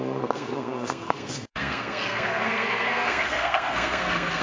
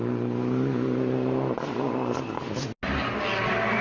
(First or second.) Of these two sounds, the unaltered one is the second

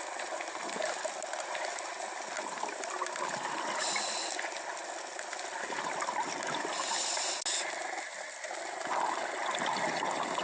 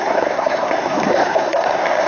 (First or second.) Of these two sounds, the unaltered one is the first